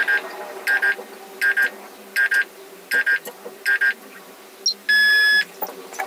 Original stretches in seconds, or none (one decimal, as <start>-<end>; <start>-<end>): 0.0-6.1